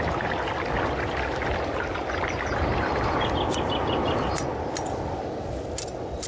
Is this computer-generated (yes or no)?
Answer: no